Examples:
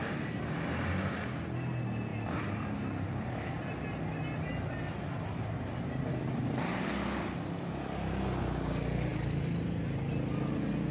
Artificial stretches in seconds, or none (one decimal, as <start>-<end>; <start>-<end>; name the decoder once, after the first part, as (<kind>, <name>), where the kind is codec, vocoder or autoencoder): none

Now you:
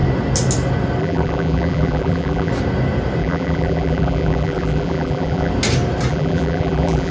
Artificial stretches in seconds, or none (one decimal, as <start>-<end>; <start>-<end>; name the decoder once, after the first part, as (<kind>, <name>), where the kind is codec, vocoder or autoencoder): 1.0-2.5 (vocoder, BigVGAN v2); 3.2-5.5; 6.1-7.1

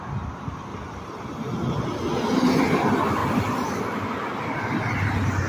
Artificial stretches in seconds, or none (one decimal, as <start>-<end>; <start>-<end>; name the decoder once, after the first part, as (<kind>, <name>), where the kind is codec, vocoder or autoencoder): 3.2-3.8 (vocoder, BigVGAN v2)

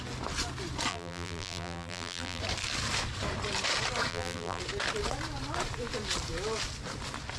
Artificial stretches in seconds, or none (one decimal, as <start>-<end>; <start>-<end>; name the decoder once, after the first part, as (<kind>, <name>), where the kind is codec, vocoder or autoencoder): 0.9-2.4 (vocoder, BigVGAN v2); 4.1-4.6

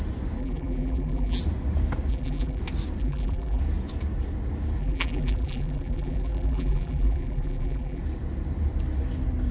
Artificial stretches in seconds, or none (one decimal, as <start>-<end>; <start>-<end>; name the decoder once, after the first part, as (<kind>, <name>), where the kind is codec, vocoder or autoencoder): 0.4-1.4 (vocoder, BigVGAN v2); 2.1-2.6; 3.0-3.6; 4.8-8.0